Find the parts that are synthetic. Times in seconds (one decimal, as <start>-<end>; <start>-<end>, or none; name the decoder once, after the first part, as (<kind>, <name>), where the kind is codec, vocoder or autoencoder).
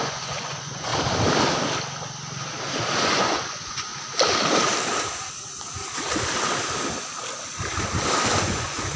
0.0-0.9 (vocoder, Vocos); 3.0-3.9; 8.4-9.0